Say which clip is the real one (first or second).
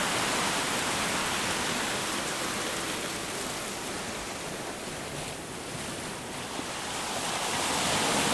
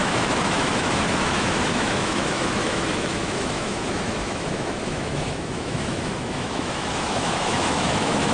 first